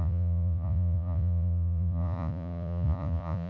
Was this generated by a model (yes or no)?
yes